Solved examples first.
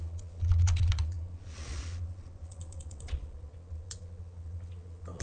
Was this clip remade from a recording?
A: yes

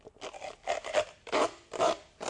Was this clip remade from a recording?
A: no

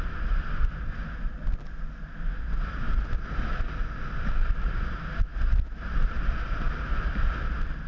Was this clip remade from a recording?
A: no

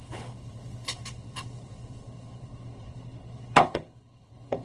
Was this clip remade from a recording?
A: yes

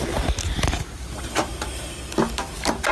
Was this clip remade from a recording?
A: no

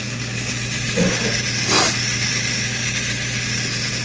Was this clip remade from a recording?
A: no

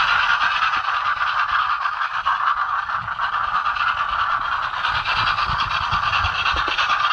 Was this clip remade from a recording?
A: no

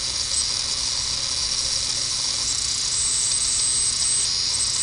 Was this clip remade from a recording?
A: no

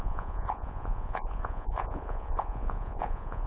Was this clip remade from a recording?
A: yes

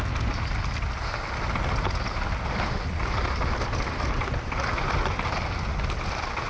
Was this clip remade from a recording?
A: no